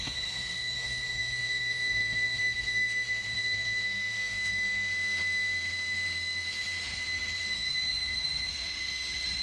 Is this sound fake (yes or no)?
yes